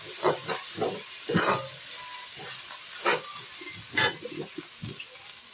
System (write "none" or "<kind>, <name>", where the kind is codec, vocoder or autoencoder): none